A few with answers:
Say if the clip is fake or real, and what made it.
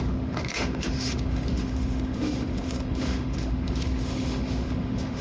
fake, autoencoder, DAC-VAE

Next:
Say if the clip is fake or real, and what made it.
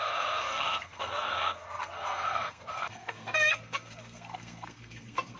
fake, codec, SNAC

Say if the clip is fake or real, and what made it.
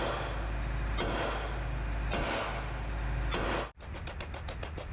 real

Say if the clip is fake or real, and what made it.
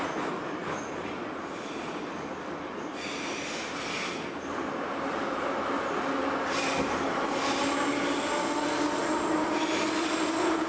real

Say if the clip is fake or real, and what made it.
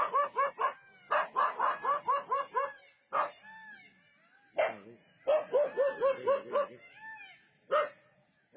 real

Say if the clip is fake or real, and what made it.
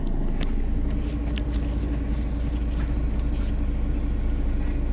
real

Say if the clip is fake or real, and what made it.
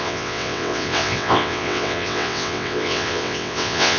fake, vocoder, WaveNeXt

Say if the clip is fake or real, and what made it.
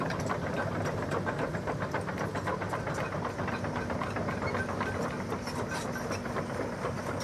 real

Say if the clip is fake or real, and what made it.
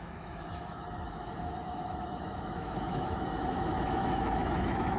fake, autoencoder, DAC-VAE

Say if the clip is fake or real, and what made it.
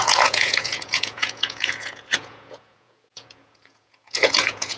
fake, vocoder, Vocos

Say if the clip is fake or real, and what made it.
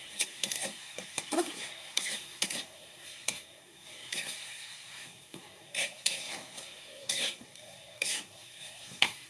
fake, codec, SNAC